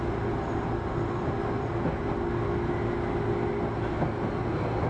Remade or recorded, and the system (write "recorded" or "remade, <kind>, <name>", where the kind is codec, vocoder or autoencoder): recorded